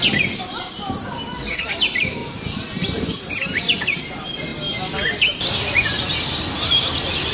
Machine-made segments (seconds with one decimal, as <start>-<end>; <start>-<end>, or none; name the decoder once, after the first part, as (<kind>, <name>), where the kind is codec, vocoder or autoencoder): none